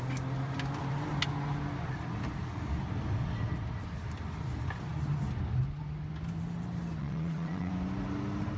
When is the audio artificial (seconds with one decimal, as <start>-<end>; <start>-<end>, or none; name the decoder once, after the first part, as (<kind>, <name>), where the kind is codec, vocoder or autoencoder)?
7.0-7.7 (vocoder, WaveNeXt)